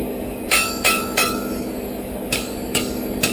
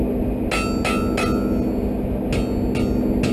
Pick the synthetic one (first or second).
first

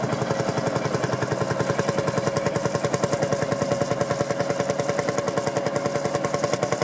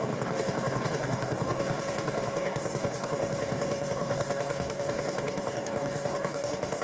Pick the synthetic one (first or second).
second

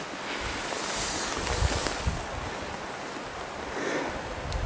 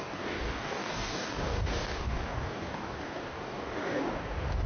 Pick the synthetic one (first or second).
second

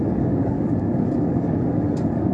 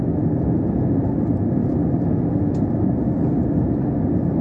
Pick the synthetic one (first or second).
first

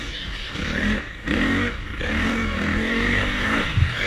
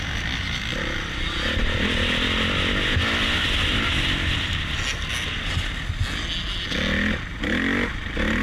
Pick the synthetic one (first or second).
first